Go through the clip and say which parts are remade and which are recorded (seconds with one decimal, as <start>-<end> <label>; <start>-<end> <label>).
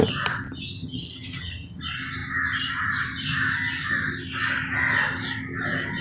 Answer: 0.0-0.8 recorded; 0.8-1.8 remade; 1.8-6.0 recorded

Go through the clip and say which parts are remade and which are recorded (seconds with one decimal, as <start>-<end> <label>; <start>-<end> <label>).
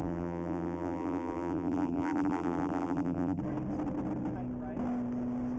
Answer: 0.0-3.4 remade; 3.4-5.6 recorded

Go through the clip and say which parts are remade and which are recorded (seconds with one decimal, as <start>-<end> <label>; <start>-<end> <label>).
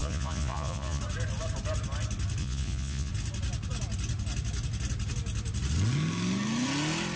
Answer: 0.0-1.0 remade; 1.0-2.4 recorded; 2.4-3.1 remade; 3.1-7.2 recorded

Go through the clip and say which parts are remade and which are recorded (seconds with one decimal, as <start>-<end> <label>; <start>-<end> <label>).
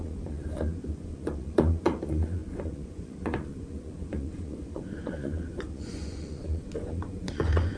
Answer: 0.0-7.8 remade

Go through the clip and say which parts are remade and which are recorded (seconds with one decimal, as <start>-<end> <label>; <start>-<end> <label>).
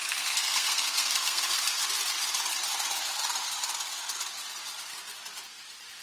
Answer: 0.0-1.6 remade; 1.6-6.0 recorded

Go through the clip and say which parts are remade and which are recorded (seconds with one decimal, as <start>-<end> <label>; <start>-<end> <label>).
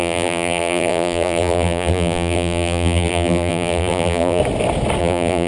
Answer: 0.0-4.4 remade; 4.4-5.0 recorded; 5.0-5.5 remade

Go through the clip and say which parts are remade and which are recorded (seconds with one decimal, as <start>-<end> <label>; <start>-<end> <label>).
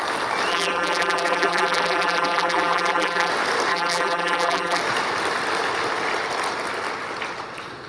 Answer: 0.0-0.5 recorded; 0.5-3.3 remade; 3.3-3.7 recorded; 3.7-4.8 remade; 4.8-7.9 recorded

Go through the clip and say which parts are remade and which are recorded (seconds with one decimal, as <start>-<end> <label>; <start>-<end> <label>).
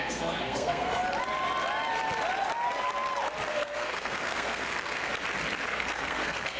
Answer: 0.0-1.0 remade; 1.0-3.5 recorded; 3.5-5.1 remade; 5.1-5.7 recorded; 5.7-6.6 remade